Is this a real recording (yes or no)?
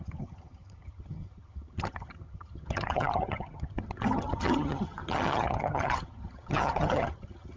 no